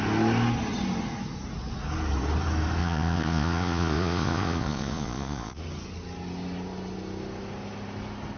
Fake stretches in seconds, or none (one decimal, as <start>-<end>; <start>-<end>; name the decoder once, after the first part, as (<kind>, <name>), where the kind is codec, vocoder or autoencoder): 2.8-5.6 (vocoder, Vocos)